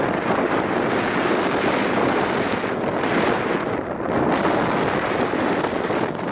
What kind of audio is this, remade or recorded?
recorded